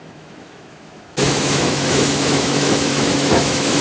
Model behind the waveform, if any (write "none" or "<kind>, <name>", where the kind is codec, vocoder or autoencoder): autoencoder, DAC-VAE